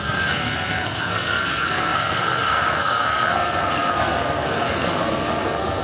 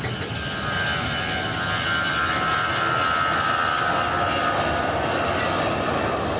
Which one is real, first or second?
second